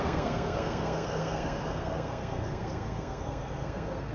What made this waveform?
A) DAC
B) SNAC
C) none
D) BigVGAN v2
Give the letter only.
B